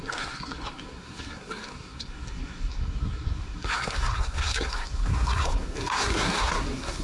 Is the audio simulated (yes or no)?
yes